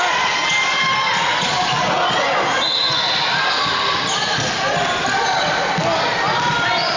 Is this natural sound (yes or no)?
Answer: yes